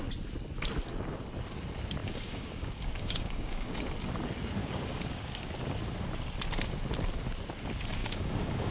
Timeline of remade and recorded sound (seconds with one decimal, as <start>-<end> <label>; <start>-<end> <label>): 0.0-2.0 recorded; 2.0-3.8 remade; 3.8-4.6 recorded; 4.6-5.5 remade; 5.5-8.0 recorded; 8.0-8.7 remade